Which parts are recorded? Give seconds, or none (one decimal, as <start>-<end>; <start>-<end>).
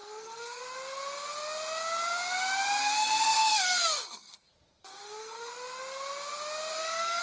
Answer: 0.6-2.8; 4.5-4.9; 5.5-6.7